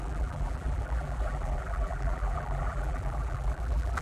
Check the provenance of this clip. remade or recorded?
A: remade